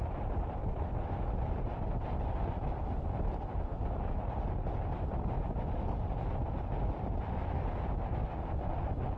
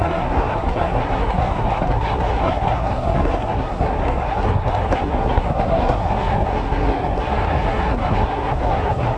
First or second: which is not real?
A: second